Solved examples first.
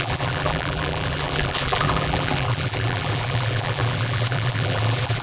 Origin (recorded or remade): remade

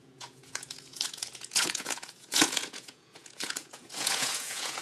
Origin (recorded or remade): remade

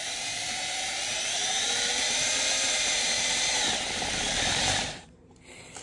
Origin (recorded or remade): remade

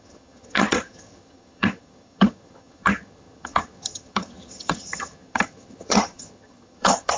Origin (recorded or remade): remade